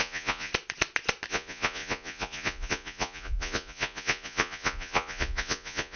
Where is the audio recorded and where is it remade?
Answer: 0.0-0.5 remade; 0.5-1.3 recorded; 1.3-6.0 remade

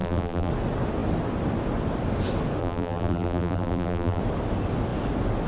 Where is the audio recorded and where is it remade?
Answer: 0.0-0.5 remade; 0.5-2.6 recorded; 2.6-4.2 remade; 4.2-5.5 recorded

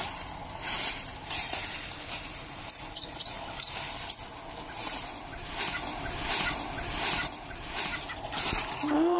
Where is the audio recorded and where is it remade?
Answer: 0.0-1.6 remade; 1.6-5.2 recorded; 5.2-7.9 remade; 7.9-8.7 recorded; 8.7-9.2 remade

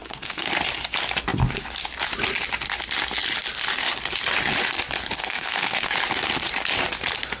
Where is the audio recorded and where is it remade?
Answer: 0.0-0.5 remade; 0.5-5.2 recorded; 5.2-5.9 remade; 5.9-7.4 recorded

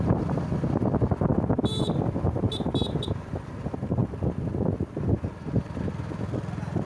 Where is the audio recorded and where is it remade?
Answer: 0.0-6.9 recorded

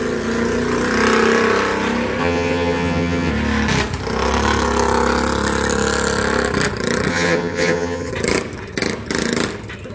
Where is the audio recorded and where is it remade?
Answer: 0.0-2.2 recorded; 2.2-3.3 remade; 3.3-7.1 recorded; 7.1-8.1 remade; 8.1-9.9 recorded

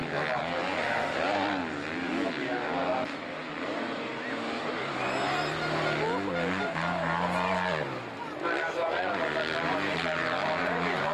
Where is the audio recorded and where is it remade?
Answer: 0.0-11.1 recorded

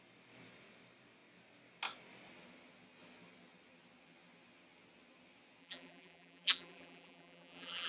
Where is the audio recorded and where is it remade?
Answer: 0.0-5.6 recorded; 5.6-7.9 remade